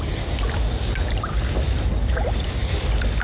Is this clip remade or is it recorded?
remade